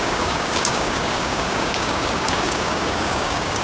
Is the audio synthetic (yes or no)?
yes